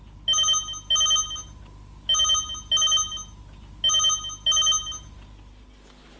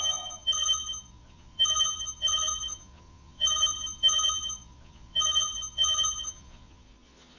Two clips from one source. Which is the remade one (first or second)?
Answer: second